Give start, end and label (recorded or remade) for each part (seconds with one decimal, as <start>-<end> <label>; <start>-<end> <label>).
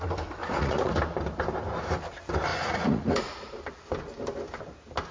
0.0-0.4 recorded; 0.4-0.9 remade; 0.9-2.5 recorded; 2.5-3.6 remade; 3.6-5.1 recorded